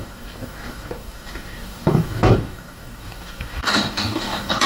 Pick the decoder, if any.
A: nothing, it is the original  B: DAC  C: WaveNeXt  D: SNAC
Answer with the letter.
B